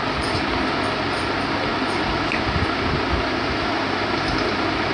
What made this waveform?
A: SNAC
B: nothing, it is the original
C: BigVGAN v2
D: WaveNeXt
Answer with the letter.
B